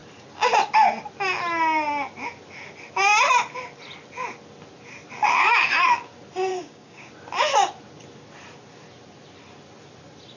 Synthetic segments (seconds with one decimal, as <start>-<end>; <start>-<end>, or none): 6.5-7.1